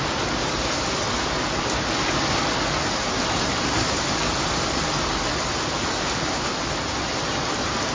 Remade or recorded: recorded